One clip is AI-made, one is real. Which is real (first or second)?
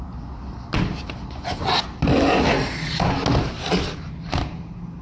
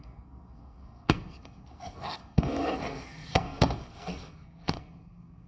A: first